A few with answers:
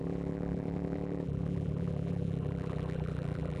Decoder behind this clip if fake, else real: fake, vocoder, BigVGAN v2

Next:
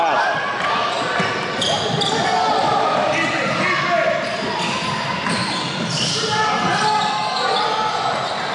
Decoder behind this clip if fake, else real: real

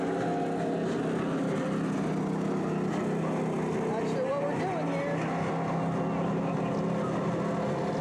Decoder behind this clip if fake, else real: real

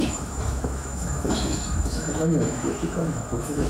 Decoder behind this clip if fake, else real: fake, autoencoder, DAC-VAE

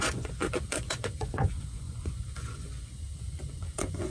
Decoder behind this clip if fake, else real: fake, vocoder, Vocos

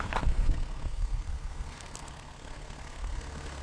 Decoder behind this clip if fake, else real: fake, codec, SNAC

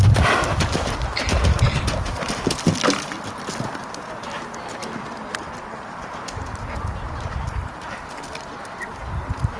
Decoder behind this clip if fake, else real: real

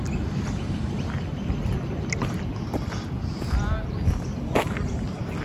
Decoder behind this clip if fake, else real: real